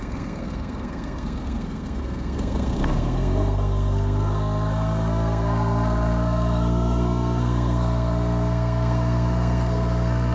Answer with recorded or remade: remade